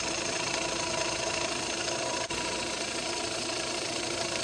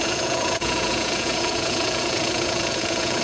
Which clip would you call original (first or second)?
first